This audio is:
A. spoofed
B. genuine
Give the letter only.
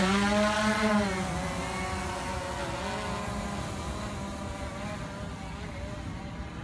B